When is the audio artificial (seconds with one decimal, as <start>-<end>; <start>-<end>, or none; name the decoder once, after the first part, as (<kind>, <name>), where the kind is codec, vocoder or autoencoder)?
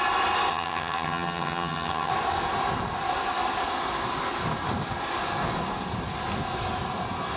0.5-2.1 (vocoder, HiFi-GAN)